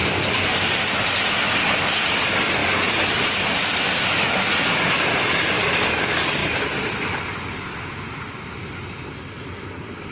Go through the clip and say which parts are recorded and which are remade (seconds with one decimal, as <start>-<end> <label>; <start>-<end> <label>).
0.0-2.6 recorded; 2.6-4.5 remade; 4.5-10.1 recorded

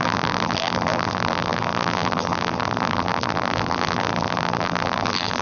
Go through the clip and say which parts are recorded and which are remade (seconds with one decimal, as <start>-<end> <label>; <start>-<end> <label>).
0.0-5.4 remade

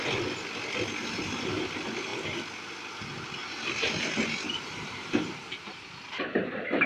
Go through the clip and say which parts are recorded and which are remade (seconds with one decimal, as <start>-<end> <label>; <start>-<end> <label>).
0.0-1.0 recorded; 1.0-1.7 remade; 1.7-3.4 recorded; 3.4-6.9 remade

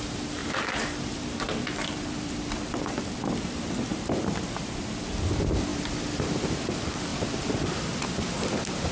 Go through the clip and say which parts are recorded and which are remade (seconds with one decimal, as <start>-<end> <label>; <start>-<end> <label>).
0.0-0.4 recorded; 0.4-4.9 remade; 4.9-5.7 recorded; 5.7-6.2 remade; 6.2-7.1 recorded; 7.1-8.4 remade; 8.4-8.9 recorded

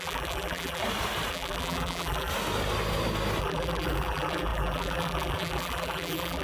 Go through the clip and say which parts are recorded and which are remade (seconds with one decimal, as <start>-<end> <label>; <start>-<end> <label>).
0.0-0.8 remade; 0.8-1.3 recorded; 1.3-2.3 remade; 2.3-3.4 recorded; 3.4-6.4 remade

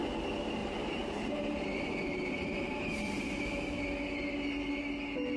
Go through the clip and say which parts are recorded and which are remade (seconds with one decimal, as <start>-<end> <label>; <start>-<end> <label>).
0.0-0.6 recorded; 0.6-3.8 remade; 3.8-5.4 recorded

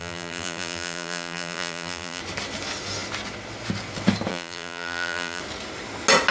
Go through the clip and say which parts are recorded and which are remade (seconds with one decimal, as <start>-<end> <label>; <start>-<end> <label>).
0.0-2.2 remade; 2.2-4.3 recorded; 4.3-5.4 remade; 5.4-6.3 recorded

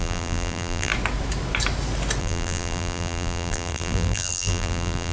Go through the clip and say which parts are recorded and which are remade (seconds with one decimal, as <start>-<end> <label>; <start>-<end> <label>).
0.0-0.9 remade; 0.9-2.2 recorded; 2.2-5.1 remade